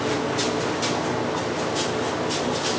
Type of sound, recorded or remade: recorded